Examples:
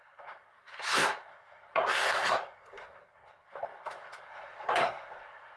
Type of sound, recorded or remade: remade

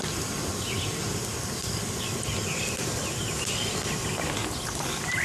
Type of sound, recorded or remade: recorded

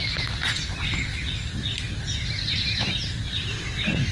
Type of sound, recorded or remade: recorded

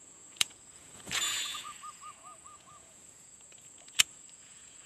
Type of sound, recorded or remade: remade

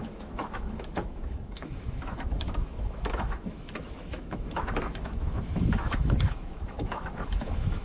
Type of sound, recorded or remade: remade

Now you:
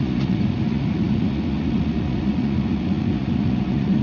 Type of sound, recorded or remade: remade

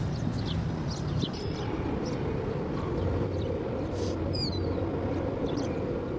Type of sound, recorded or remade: recorded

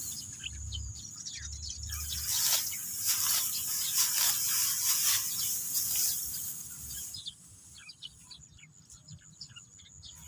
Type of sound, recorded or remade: recorded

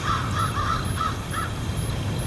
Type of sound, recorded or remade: recorded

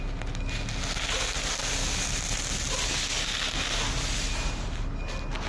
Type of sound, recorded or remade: recorded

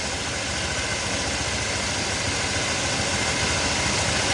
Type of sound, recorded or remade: recorded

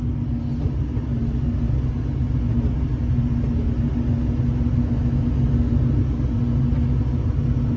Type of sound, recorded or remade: recorded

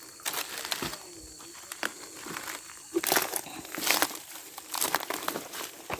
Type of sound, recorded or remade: recorded